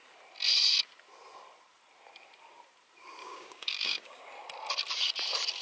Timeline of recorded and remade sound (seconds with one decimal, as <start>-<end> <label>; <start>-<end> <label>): 0.0-3.2 recorded; 3.2-4.2 remade; 4.2-5.6 recorded